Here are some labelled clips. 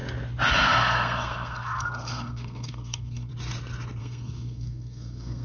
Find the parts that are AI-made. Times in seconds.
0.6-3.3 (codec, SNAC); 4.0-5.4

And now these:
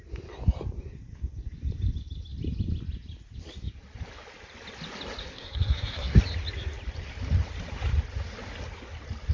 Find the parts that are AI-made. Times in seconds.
5.2-6.2 (codec, SNAC)

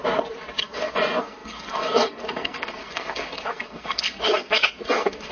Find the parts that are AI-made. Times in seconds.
0.6-5.3 (codec, SNAC)